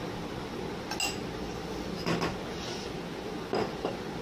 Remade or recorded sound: recorded